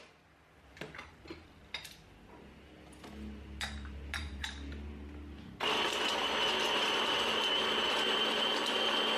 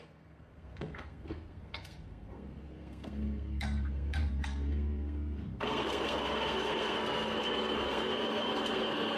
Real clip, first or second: first